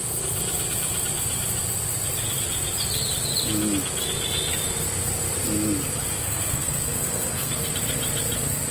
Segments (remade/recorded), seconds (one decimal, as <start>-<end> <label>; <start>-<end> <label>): 0.0-6.2 recorded; 6.2-7.7 remade; 7.7-8.7 recorded